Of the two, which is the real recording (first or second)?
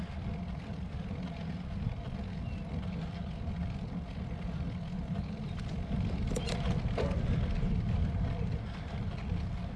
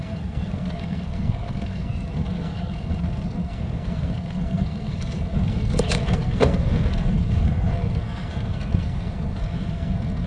first